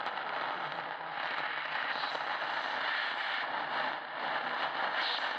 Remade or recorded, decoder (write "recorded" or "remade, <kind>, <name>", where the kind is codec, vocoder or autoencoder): recorded